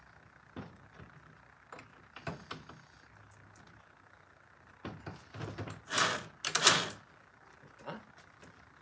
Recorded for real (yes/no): yes